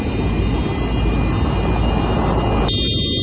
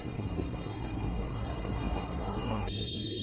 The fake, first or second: second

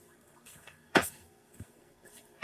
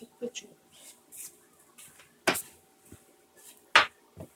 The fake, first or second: first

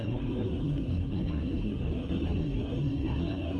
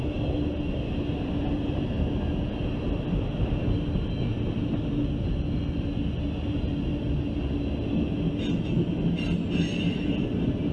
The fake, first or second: first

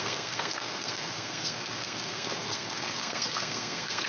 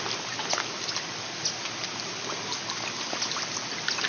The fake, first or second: first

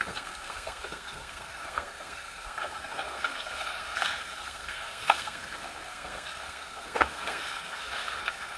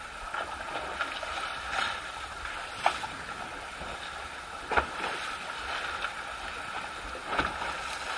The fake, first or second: first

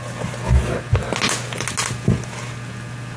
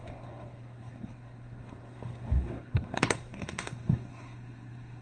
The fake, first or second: second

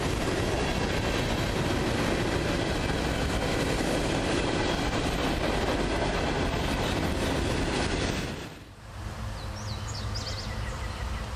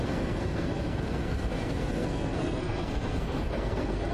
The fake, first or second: second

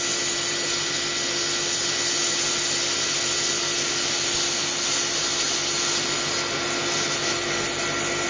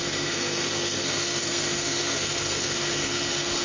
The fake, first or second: second